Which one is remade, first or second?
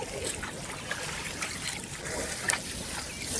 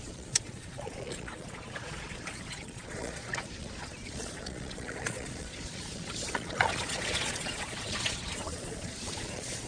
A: second